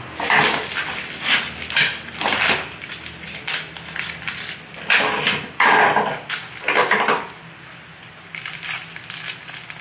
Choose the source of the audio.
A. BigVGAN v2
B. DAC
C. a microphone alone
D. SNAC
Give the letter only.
A